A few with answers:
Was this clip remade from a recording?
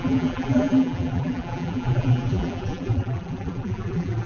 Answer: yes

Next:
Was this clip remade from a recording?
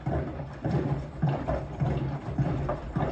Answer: yes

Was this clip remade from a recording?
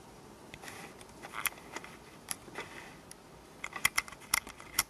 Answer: no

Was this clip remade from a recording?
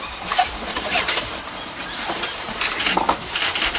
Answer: yes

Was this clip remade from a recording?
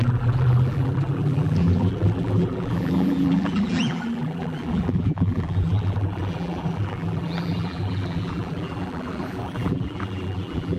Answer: yes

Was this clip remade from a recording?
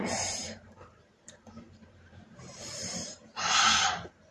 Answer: yes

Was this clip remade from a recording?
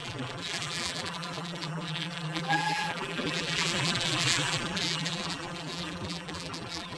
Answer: yes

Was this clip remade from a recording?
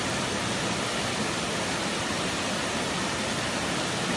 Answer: no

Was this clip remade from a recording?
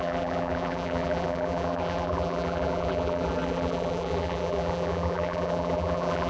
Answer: yes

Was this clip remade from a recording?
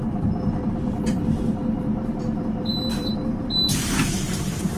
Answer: yes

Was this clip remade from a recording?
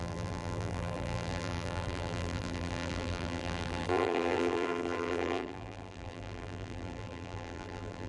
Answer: yes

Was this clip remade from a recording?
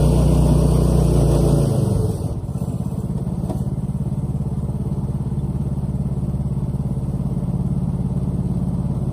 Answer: no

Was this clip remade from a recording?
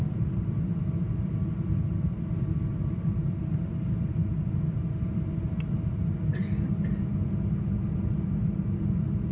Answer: no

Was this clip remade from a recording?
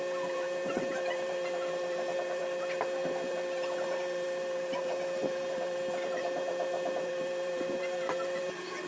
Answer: yes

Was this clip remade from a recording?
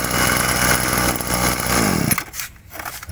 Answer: no